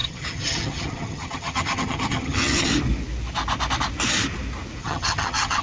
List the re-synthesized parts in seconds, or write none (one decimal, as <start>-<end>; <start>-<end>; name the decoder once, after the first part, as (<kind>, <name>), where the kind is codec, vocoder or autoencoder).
0.0-2.7 (vocoder, HiFi-GAN); 4.8-5.6